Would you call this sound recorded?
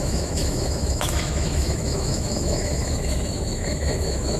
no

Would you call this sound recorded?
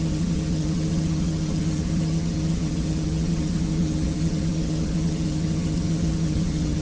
no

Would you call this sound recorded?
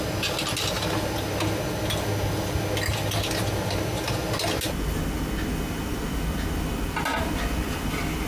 yes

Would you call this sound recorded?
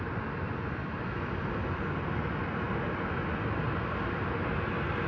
yes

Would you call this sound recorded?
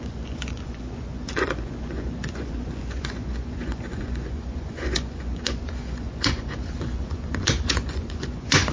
no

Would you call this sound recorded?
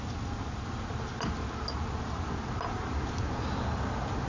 yes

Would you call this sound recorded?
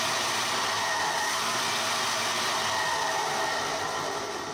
yes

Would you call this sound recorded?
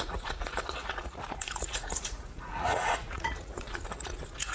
no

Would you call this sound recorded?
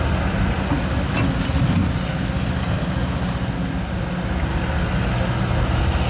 yes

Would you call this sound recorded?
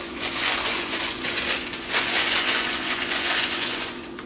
no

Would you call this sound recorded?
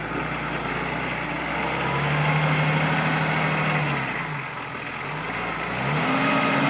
yes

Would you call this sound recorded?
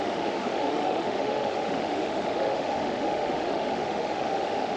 no